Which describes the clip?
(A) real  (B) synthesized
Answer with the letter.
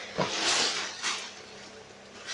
A